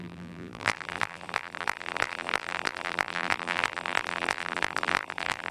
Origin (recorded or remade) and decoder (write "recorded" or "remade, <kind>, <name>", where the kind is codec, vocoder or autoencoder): remade, vocoder, BigVGAN v2